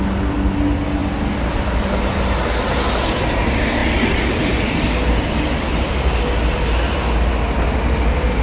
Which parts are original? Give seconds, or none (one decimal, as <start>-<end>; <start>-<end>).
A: 0.0-8.4